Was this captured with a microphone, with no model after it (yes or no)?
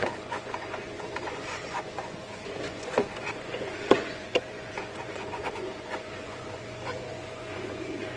no